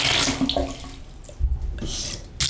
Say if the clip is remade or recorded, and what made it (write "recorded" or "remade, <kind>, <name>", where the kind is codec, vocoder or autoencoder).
recorded